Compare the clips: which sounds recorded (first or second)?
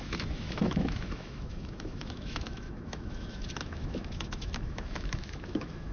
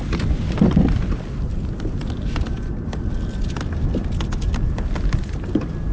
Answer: second